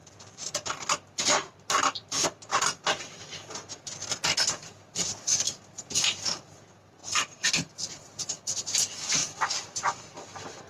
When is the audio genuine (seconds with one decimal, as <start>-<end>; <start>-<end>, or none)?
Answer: 3.5-9.2; 10.0-10.7